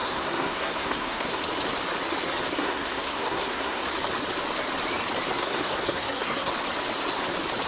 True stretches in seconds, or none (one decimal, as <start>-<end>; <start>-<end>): 1.4-2.5; 3.8-5.4; 6.5-7.7

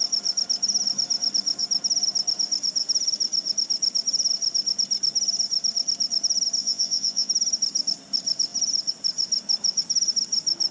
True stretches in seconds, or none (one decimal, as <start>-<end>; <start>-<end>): 0.0-6.6; 7.3-10.7